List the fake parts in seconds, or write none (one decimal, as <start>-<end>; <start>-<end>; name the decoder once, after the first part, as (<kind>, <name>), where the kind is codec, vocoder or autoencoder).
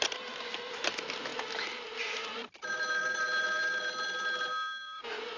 none